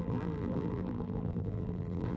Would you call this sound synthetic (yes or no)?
yes